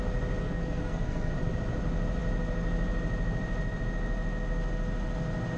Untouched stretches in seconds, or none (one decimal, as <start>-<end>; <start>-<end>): 0.0-0.4; 1.3-5.6